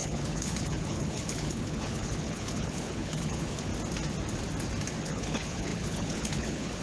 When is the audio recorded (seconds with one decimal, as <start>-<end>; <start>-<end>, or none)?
3.7-5.0